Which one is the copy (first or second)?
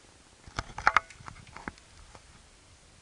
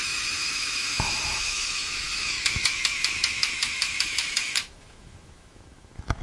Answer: second